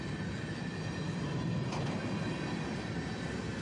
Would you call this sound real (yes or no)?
yes